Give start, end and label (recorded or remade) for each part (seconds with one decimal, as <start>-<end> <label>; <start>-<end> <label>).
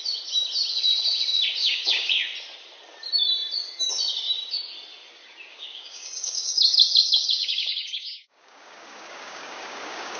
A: 0.0-1.5 recorded; 1.5-2.2 remade; 2.2-5.5 recorded; 5.5-10.2 remade